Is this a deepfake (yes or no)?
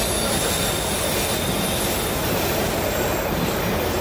no